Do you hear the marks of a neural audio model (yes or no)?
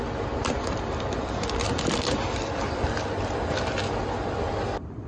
yes